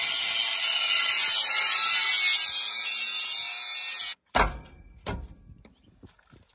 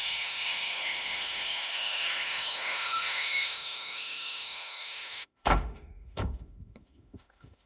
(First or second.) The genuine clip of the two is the first